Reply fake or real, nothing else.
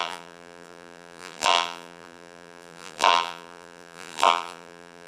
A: fake